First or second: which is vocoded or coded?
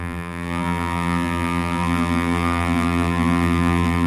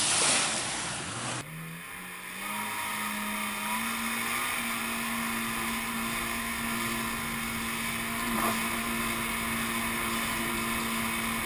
first